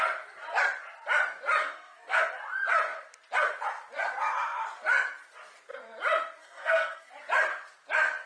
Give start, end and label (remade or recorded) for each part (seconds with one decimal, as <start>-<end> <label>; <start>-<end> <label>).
0.0-1.6 recorded; 1.6-2.2 remade; 2.2-6.4 recorded; 6.4-7.1 remade; 7.1-8.3 recorded